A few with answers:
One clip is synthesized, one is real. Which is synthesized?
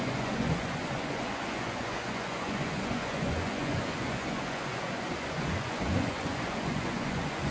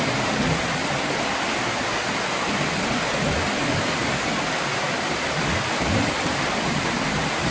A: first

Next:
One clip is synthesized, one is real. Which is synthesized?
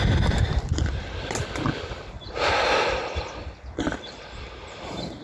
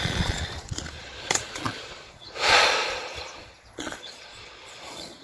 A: second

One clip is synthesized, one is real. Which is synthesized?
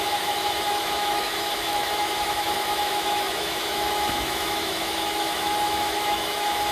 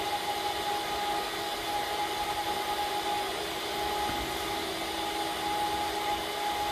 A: first